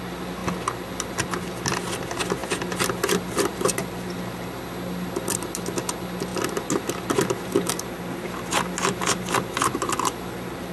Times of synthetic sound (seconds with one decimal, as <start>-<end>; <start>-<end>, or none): none